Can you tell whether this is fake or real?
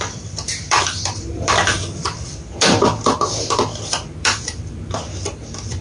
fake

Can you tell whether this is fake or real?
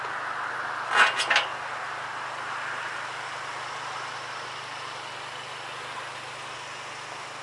real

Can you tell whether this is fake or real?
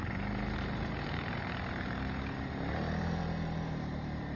fake